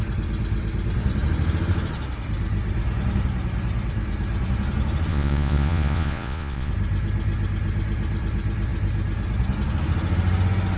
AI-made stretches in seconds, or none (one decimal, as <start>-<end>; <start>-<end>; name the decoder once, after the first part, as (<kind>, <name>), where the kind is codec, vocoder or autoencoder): 5.1-6.7 (vocoder, Vocos)